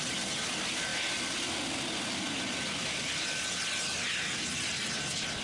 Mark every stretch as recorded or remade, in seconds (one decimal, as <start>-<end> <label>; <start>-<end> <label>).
0.0-5.4 recorded